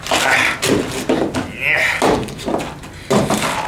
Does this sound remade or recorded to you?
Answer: recorded